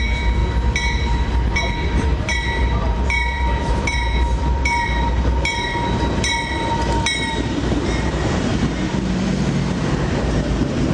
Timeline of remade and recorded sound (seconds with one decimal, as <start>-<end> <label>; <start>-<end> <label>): 0.0-0.4 remade; 0.4-1.7 recorded; 1.7-6.3 remade; 6.3-7.3 recorded; 7.3-8.5 remade; 8.5-10.2 recorded; 10.2-10.9 remade